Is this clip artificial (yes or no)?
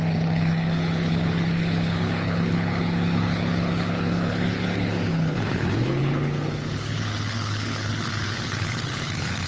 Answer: yes